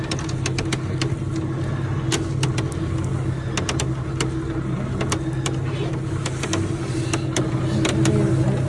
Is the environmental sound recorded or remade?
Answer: recorded